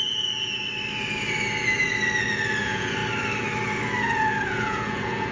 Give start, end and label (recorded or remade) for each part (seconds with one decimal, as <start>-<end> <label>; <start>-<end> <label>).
0.0-0.6 remade; 0.6-2.6 recorded; 2.6-3.0 remade; 3.0-4.5 recorded; 4.5-5.3 remade

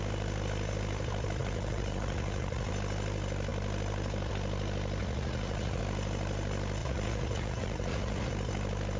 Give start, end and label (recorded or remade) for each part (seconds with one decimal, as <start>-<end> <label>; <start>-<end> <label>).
0.0-1.4 recorded; 1.4-2.7 remade; 2.7-5.0 recorded; 5.0-5.8 remade; 5.8-6.8 recorded; 6.8-8.3 remade; 8.3-9.0 recorded

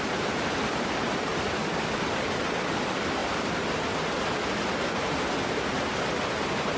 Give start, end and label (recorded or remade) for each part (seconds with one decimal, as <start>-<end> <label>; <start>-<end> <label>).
0.0-6.8 recorded

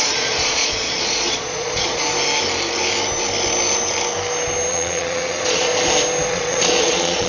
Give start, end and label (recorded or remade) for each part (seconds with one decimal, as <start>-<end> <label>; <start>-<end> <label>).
0.0-2.0 remade; 2.0-4.7 recorded; 4.7-5.7 remade; 5.7-6.3 recorded; 6.3-7.3 remade

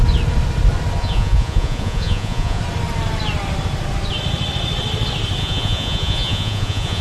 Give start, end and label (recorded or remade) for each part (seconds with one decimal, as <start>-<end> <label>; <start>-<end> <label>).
0.0-1.0 recorded; 1.0-2.6 remade; 2.6-5.4 recorded; 5.4-7.0 remade

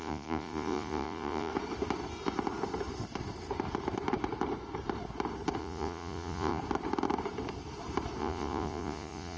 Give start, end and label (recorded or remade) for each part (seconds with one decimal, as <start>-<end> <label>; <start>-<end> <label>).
0.0-1.5 remade; 1.5-5.6 recorded; 5.6-6.6 remade; 6.6-8.2 recorded; 8.2-9.4 remade

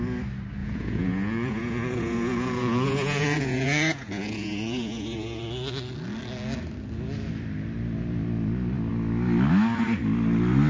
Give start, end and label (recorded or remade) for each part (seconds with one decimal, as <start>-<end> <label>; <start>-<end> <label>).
0.0-0.6 recorded; 0.6-5.4 remade; 5.4-10.7 recorded